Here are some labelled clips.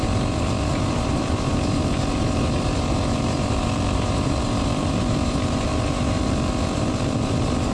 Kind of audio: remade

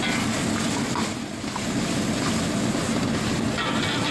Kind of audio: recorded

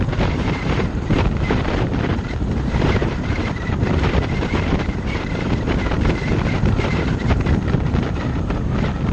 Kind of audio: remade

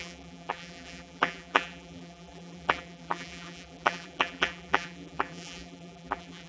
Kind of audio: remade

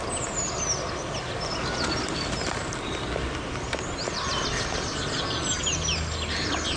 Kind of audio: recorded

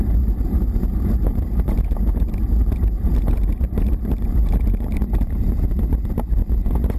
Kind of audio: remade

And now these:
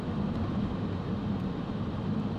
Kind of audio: recorded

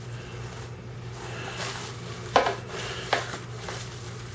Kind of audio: recorded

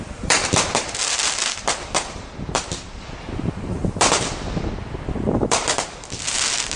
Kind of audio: remade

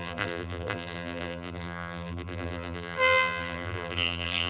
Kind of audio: remade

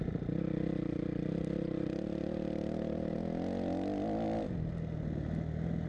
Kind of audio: recorded